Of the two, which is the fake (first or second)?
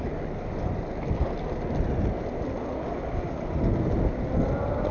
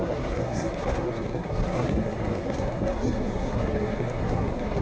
second